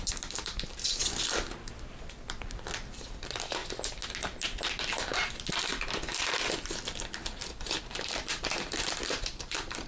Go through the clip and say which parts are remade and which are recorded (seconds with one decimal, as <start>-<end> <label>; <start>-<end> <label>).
0.0-3.6 remade; 3.6-7.8 recorded; 7.8-9.9 remade